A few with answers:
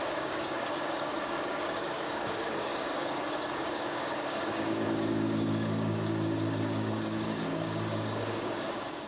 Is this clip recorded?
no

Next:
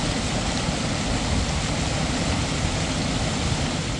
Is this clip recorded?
yes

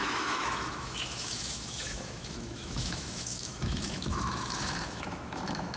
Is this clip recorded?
no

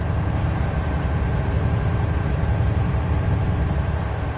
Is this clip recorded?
no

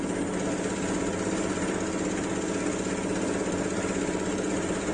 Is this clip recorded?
yes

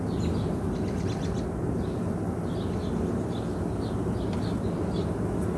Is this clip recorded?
yes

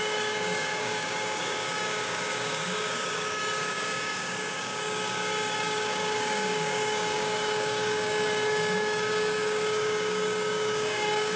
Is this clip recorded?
no